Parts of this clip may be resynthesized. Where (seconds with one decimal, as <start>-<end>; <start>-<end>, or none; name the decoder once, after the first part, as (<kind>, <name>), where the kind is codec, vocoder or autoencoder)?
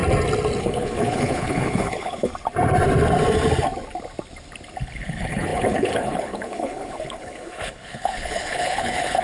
0.6-2.3 (codec, HILCodec); 4.8-9.2